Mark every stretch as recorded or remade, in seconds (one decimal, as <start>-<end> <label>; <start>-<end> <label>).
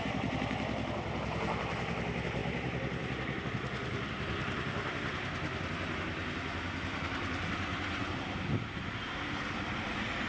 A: 0.0-10.3 recorded